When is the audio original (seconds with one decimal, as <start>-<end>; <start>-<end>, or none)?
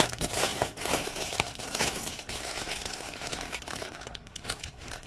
none